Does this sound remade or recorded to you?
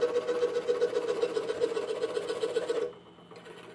recorded